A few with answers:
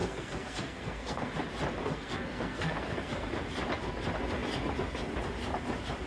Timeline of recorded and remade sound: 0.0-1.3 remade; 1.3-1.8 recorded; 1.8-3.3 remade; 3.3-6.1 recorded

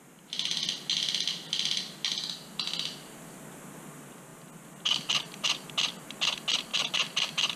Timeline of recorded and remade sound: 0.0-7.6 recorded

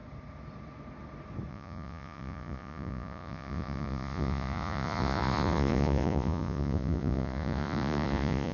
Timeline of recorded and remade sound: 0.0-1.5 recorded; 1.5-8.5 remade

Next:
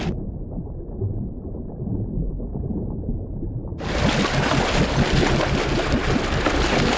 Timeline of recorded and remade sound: 0.0-7.0 recorded

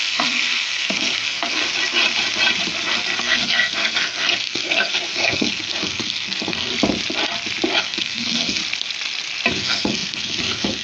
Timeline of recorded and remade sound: 0.0-1.6 remade; 1.6-3.2 recorded; 3.2-6.7 remade; 6.7-7.8 recorded; 7.8-8.6 remade; 8.6-9.5 recorded; 9.5-10.8 remade

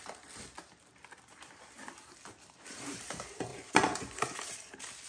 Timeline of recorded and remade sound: 0.0-3.5 recorded; 3.5-4.2 remade; 4.2-5.1 recorded

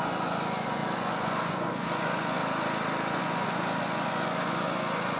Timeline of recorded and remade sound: 0.0-2.4 remade; 2.4-3.1 recorded; 3.1-5.2 remade